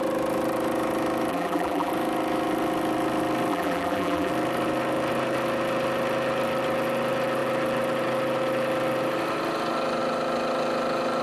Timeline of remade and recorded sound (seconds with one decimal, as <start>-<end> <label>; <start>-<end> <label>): 0.0-1.3 recorded; 1.3-1.9 remade; 1.9-3.5 recorded; 3.5-4.3 remade; 4.3-11.2 recorded